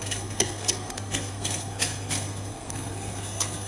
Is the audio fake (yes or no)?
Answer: yes